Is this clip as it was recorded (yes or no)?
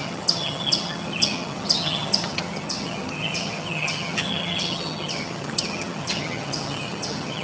no